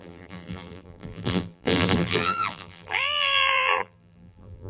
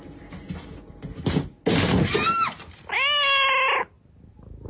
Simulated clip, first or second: first